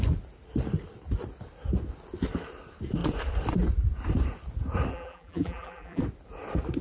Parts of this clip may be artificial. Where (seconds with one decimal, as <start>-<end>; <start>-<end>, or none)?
4.9-6.0